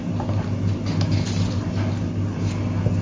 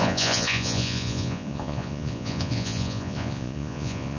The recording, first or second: first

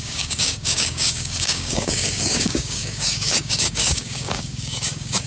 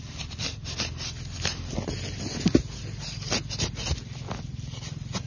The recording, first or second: second